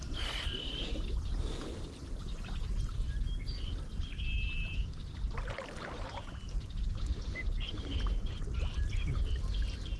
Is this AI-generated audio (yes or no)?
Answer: no